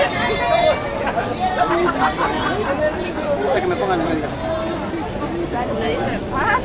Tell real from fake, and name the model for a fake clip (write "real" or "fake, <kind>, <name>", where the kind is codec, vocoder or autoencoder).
real